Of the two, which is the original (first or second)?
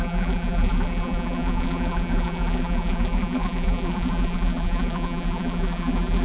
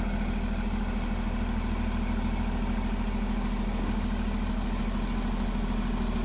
second